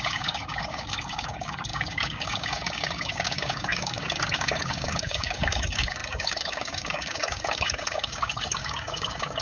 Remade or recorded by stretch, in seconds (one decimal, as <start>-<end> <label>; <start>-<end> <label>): 0.0-9.4 remade